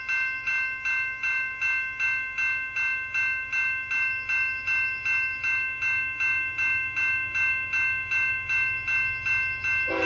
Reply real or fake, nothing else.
real